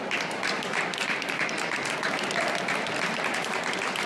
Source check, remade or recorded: recorded